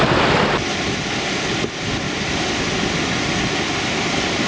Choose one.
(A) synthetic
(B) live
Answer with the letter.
B